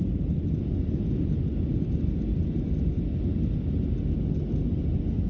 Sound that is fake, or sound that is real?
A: real